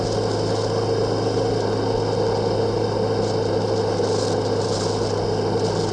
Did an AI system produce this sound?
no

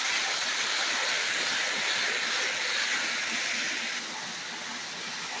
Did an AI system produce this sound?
no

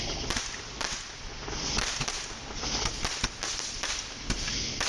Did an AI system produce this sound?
yes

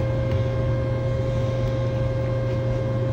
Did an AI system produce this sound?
no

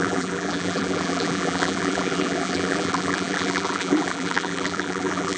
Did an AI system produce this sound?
yes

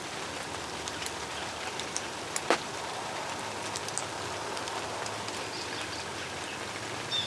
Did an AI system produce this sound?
yes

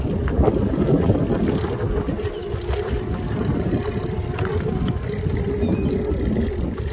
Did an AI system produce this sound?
no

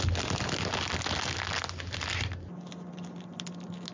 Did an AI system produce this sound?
no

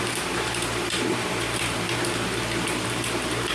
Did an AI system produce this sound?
yes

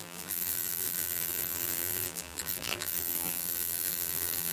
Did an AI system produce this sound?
yes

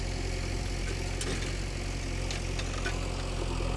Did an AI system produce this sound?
no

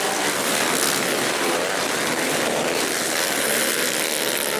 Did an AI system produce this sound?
yes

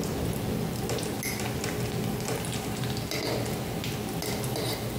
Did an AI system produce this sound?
no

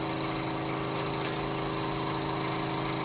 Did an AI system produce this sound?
no